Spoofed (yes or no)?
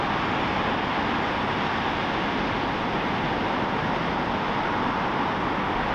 no